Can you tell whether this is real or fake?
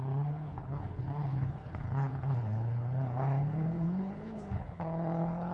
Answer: fake